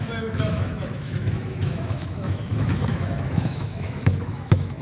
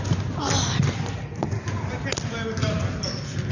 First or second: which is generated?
first